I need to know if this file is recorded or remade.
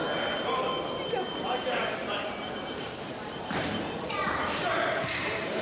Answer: remade